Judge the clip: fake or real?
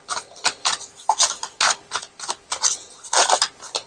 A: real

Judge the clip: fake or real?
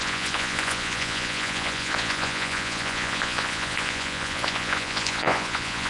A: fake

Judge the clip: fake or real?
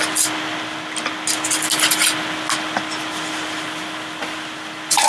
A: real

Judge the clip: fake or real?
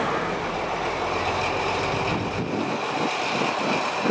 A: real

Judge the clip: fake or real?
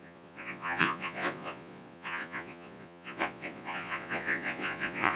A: fake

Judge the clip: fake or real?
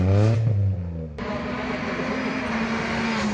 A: real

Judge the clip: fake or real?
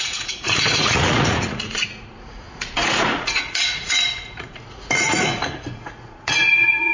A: fake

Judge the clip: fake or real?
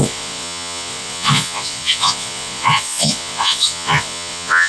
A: fake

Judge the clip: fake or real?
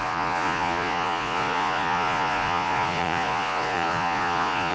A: fake